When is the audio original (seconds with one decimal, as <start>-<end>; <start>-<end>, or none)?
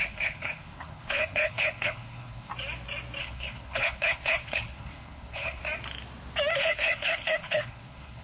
2.5-3.2; 5.6-6.6